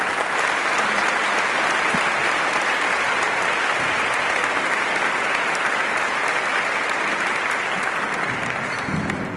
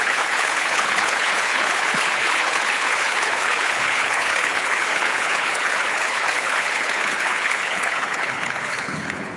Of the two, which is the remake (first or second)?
second